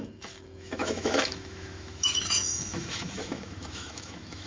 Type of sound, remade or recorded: remade